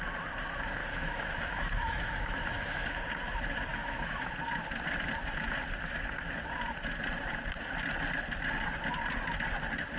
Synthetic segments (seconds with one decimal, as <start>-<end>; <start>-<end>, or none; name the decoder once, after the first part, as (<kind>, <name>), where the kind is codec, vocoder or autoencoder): 0.8-3.0 (autoencoder, DAC-VAE); 3.7-4.3